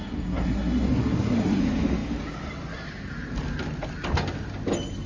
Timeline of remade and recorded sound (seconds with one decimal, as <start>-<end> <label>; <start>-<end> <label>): 0.0-1.6 remade; 1.6-5.1 recorded